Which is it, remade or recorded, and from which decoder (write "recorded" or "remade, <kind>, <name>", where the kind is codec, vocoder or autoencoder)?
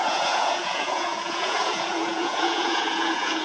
remade, vocoder, Vocos